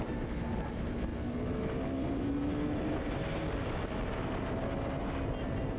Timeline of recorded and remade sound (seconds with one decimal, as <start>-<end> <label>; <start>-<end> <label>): 0.0-5.8 recorded